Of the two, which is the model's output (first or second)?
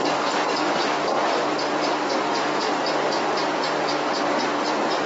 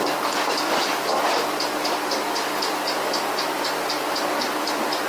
first